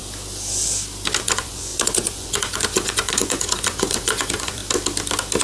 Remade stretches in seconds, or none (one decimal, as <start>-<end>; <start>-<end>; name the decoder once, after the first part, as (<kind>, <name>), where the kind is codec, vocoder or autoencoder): 1.2-4.6 (vocoder, Vocos)